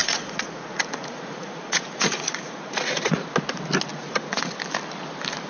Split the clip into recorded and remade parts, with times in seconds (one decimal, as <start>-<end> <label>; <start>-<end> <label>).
0.0-3.3 remade; 3.3-3.9 recorded; 3.9-4.5 remade; 4.5-5.5 recorded